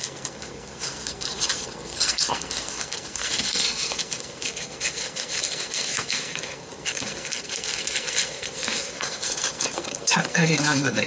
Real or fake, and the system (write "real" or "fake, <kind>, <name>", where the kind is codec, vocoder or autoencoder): fake, codec, SNAC